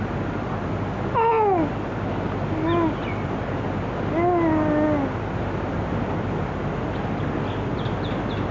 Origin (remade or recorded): recorded